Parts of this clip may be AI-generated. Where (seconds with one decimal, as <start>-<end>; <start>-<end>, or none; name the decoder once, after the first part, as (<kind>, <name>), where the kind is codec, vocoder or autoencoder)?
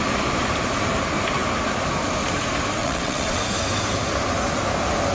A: 2.8-3.4 (vocoder, WaveNeXt)